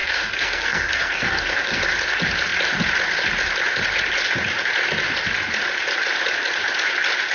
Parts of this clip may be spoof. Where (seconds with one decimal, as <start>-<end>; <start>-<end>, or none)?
0.0-1.8